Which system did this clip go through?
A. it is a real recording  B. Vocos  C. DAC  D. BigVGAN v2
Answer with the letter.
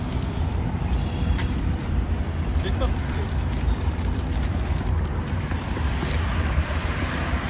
D